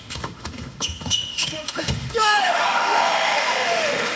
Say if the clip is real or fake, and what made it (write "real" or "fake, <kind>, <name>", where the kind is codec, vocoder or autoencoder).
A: fake, autoencoder, DAC-VAE